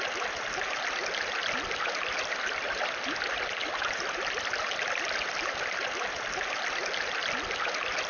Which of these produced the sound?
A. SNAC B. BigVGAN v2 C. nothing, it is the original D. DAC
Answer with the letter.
C